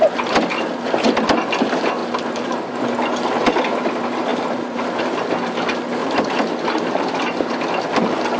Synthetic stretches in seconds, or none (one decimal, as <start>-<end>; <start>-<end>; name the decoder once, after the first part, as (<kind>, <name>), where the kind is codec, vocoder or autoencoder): 2.0-2.6 (vocoder, BigVGAN v2); 4.3-4.9; 6.0-7.1